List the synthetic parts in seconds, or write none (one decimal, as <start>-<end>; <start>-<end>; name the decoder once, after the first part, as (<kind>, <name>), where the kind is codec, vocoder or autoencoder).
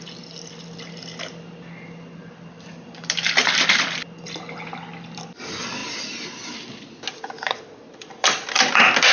none